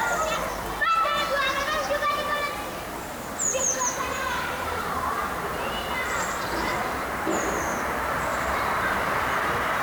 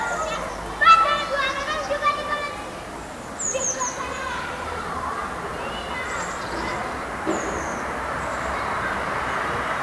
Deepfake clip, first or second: first